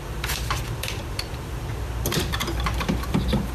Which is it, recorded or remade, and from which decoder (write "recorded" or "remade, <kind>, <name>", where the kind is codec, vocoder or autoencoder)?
remade, vocoder, BigVGAN v2